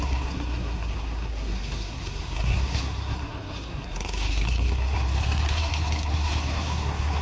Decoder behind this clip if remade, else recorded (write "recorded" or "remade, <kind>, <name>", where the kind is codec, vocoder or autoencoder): remade, codec, SNAC